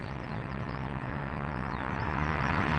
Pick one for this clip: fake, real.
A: fake